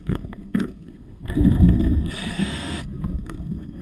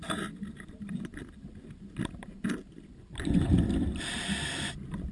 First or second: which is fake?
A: first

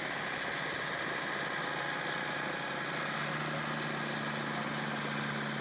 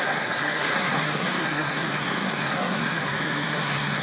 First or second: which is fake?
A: second